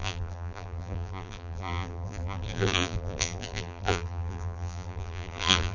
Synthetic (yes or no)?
yes